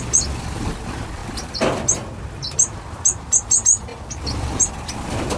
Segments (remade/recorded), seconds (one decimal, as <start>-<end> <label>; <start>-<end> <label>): 0.0-5.4 recorded